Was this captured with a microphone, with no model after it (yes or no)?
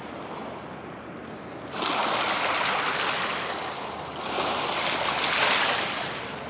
yes